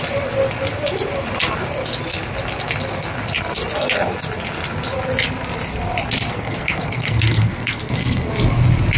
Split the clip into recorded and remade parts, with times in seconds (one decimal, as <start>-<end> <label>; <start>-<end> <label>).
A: 0.0-6.3 recorded; 6.3-8.3 remade; 8.3-9.0 recorded